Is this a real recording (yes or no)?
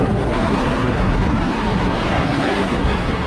no